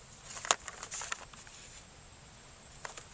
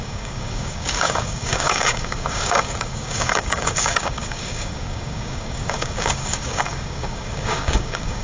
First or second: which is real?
first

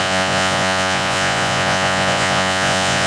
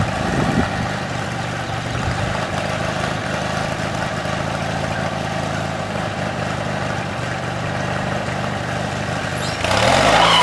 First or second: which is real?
second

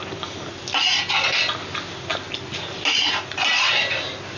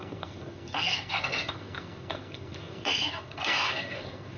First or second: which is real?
first